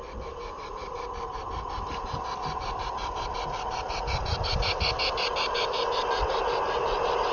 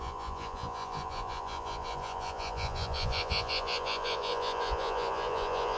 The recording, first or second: first